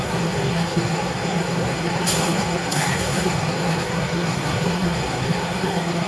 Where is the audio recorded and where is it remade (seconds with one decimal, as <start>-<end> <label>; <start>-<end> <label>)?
0.0-6.1 remade